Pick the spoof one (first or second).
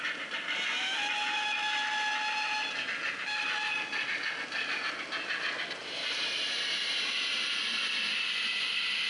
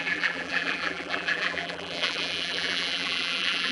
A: second